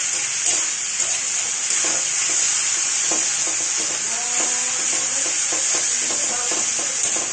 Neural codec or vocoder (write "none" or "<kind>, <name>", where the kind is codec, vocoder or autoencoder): none